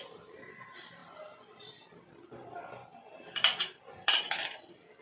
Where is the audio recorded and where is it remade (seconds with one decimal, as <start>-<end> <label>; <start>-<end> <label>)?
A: 0.0-5.0 remade